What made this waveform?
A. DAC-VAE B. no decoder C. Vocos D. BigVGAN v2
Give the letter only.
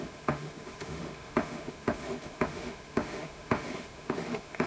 A